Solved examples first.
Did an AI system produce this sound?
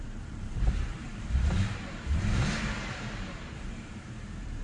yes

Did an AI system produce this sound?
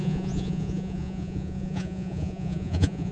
yes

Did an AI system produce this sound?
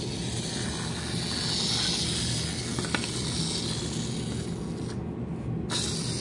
no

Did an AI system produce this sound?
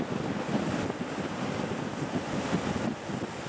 no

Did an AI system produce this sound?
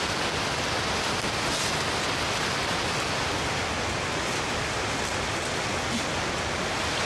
no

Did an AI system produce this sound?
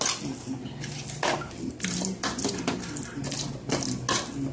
no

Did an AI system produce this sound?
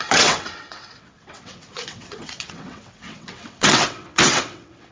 yes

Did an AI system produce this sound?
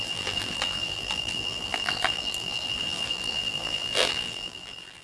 yes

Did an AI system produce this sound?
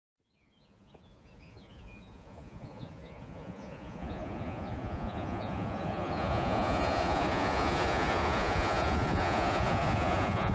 yes